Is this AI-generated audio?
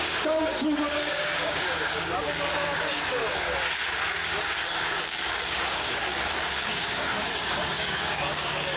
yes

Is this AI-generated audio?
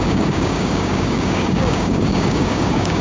yes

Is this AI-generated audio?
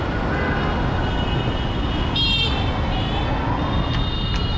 no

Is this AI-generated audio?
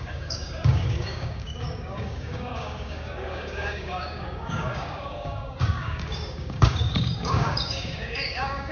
yes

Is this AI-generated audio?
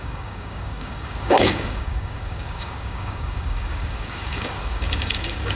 yes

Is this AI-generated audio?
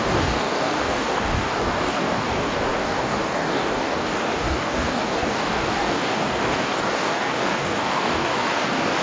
yes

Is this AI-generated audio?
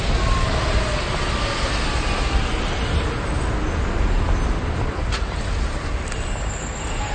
no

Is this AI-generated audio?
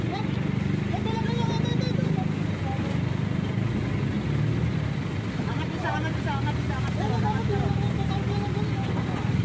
no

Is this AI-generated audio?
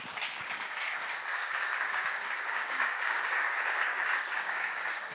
yes